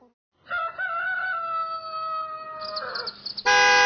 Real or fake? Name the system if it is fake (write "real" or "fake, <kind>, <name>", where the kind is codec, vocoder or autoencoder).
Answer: real